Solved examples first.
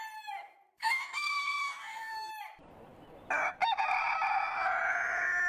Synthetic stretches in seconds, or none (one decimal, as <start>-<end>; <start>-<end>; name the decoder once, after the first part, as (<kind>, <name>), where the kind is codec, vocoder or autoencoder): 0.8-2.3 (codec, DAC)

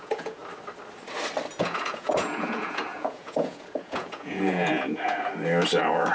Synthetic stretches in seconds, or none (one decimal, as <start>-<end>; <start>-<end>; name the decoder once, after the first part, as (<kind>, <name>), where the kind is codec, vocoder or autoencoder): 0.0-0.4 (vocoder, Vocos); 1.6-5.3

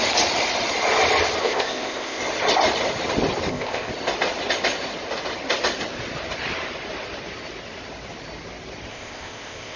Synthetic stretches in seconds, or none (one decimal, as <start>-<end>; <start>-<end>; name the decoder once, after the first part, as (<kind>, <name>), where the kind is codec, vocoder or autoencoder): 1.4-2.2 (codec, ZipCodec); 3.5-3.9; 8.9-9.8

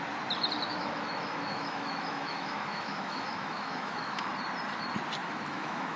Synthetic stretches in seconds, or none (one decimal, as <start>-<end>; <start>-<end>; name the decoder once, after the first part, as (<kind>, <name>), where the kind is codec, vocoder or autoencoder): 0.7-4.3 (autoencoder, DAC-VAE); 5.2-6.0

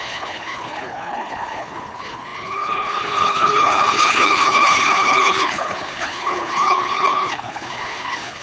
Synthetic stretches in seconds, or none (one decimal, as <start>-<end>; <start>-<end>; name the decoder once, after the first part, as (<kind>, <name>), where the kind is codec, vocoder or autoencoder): 0.0-8.4 (codec, HILCodec)

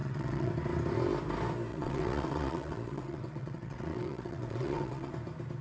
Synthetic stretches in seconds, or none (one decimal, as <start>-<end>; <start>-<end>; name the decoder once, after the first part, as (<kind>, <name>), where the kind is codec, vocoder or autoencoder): 0.0-0.5 (vocoder, WaveNeXt); 1.7-5.1